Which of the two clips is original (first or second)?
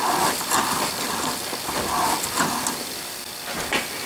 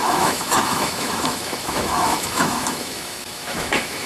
first